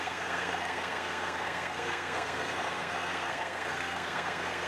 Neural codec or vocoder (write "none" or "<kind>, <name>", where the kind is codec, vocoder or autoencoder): codec, SNAC